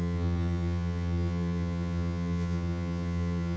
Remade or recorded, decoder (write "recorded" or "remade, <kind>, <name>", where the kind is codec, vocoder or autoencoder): remade, vocoder, HiFi-GAN